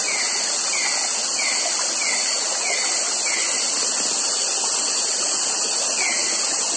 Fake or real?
real